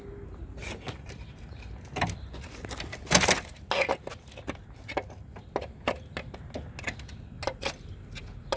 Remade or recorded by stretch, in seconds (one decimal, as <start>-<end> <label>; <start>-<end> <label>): 0.0-8.6 recorded